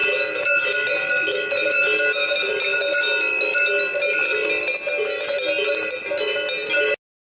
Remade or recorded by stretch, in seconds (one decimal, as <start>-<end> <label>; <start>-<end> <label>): 0.0-7.4 recorded